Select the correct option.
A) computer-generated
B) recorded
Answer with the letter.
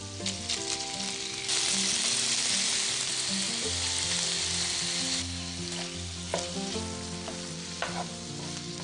B